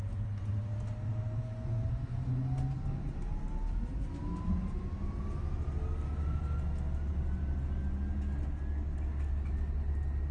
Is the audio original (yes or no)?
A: yes